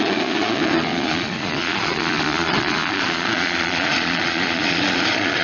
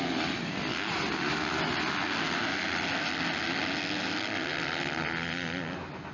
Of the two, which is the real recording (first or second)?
second